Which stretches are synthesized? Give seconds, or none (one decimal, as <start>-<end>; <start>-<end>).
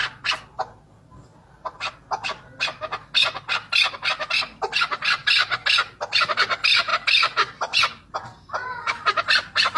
1.3-1.9